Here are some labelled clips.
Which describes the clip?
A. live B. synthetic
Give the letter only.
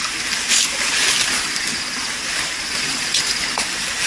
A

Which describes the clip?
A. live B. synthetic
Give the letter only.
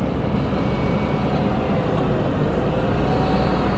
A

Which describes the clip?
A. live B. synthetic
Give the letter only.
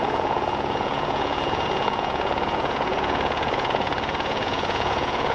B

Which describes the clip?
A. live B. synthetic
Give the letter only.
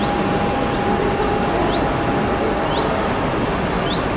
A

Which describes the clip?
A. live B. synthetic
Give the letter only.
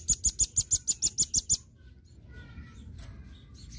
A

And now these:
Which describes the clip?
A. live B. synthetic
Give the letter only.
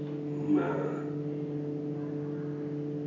A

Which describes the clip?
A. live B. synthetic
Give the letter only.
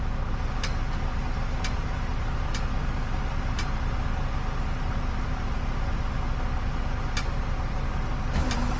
A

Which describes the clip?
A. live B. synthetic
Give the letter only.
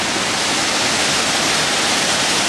A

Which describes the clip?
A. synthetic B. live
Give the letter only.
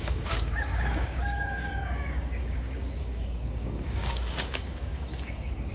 A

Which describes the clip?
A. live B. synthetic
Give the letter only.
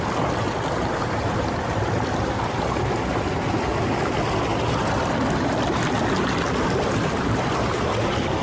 A